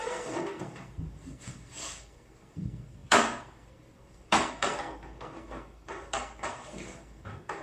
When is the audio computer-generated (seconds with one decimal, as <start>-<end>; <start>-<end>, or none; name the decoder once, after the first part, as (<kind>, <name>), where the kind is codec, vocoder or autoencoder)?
0.0-7.6 (codec, SNAC)